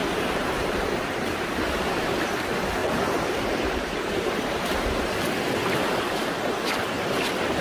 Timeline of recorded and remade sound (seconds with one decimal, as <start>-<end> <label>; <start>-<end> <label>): 0.0-1.2 remade; 1.2-2.8 recorded; 2.8-5.1 remade; 5.1-7.6 recorded